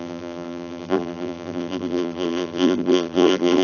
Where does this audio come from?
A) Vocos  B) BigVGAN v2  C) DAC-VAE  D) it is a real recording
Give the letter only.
B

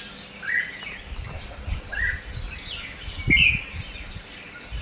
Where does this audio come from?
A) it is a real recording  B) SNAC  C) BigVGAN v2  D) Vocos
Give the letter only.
C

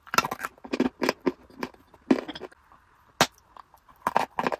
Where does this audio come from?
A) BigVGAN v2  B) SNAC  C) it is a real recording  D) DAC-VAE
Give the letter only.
C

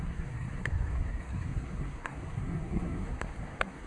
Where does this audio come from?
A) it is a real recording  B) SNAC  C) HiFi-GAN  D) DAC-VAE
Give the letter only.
B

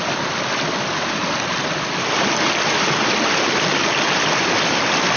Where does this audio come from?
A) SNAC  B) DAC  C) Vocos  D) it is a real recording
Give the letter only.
D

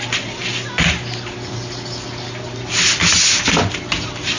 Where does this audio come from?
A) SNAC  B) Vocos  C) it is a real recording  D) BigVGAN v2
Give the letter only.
C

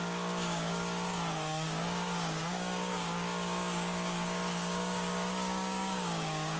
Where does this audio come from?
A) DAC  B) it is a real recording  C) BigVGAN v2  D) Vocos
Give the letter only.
A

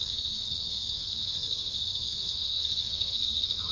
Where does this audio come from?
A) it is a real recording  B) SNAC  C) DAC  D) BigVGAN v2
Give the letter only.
B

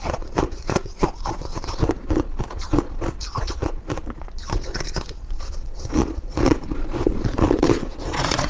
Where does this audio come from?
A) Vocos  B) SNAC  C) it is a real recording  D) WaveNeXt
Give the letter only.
A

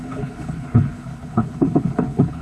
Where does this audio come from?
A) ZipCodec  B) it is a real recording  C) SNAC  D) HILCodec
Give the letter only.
D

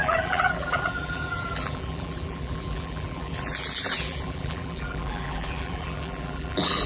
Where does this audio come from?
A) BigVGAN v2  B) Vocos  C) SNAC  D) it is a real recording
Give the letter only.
A